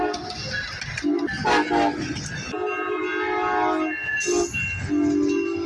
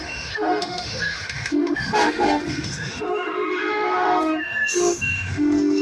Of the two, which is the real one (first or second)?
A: first